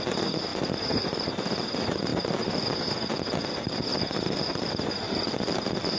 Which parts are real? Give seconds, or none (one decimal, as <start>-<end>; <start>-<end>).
0.0-0.5; 1.4-2.1; 2.7-3.9